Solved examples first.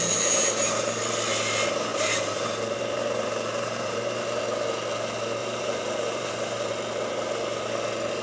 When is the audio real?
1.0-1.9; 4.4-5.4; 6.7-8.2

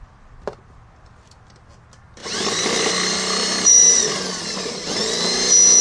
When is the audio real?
0.0-5.8

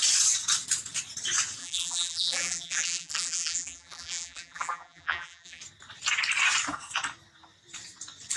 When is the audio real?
0.0-1.6; 5.6-8.4

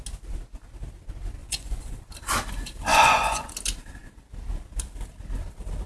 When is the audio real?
0.0-1.4; 2.1-2.9; 3.5-5.9

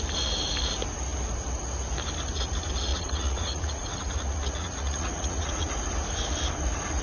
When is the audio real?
0.0-2.9; 5.7-7.0